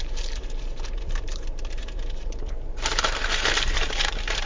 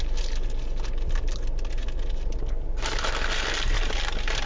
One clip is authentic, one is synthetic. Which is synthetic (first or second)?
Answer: first